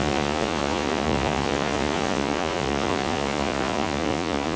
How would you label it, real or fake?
fake